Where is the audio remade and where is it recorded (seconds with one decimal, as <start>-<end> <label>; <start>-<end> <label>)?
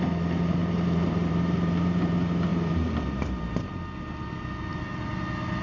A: 0.0-0.6 recorded; 0.6-2.1 remade; 2.1-2.5 recorded; 2.5-3.7 remade; 3.7-5.6 recorded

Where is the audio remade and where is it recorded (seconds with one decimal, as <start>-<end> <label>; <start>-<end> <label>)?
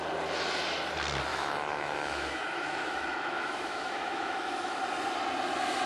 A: 0.0-1.3 recorded; 1.3-4.8 remade; 4.8-5.9 recorded